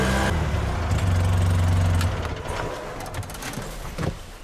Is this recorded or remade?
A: recorded